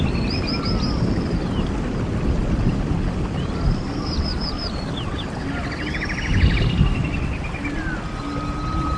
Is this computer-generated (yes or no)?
no